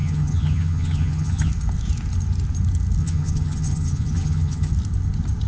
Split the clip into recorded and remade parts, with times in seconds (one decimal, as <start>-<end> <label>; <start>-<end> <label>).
0.0-1.5 remade; 1.5-3.0 recorded; 3.0-4.7 remade; 4.7-5.5 recorded